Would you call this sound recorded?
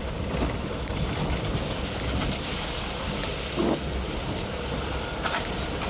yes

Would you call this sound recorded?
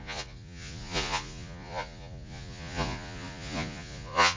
no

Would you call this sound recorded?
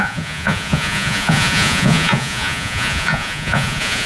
no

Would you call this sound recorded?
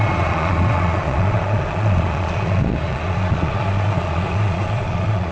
no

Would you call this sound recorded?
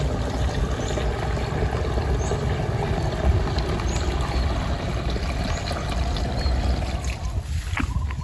yes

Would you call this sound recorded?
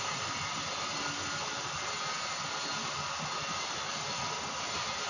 yes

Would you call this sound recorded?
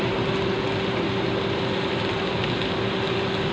yes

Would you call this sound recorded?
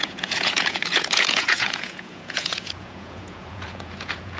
no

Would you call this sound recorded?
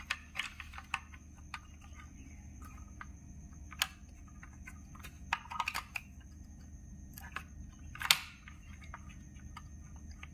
yes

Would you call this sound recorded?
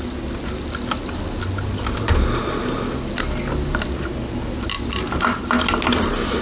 yes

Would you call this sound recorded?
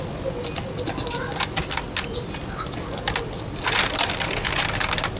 yes